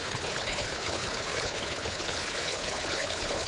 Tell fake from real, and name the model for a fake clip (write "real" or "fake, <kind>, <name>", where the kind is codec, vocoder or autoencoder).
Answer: fake, codec, HILCodec